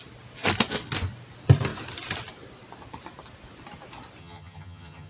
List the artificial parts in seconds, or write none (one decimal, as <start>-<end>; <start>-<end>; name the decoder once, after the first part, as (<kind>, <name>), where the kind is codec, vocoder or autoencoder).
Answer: 4.2-5.1 (vocoder, HiFi-GAN)